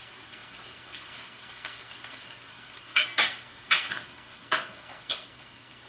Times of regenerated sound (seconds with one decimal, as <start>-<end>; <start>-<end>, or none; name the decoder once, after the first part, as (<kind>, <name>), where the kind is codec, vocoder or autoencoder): 0.0-5.9 (codec, SNAC)